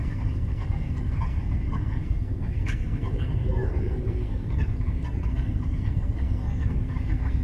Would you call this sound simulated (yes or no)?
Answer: yes